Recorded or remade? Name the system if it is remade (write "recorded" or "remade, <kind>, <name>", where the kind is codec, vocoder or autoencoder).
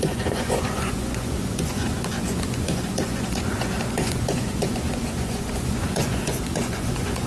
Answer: remade, vocoder, Vocos